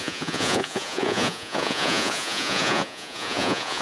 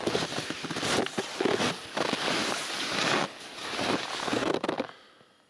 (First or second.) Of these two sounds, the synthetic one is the first